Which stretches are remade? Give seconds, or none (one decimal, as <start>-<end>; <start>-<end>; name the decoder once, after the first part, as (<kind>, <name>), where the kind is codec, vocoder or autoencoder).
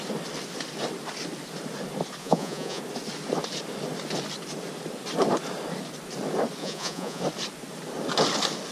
2.2-2.8 (vocoder, Vocos); 6.6-7.2